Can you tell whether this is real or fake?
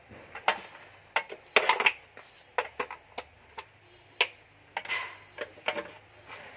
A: real